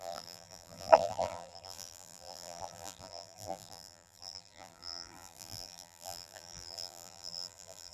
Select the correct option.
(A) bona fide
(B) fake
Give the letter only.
B